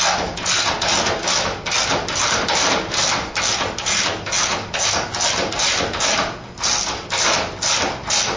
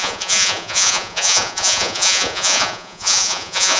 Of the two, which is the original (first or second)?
first